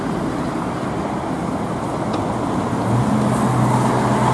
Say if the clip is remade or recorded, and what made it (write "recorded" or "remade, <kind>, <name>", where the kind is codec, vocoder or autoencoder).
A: recorded